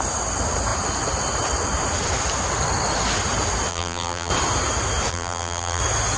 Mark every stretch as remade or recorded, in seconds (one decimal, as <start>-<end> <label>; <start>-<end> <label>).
0.0-3.7 recorded; 3.7-4.3 remade; 4.3-5.1 recorded; 5.1-5.8 remade; 5.8-6.2 recorded